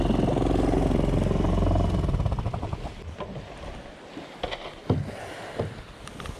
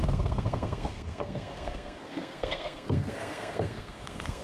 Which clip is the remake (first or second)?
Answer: second